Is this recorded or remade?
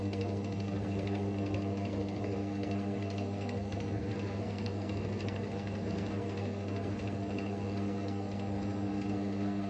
remade